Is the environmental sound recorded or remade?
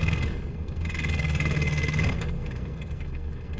remade